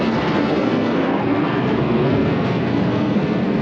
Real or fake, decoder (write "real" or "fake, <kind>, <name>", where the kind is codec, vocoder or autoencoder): fake, codec, SNAC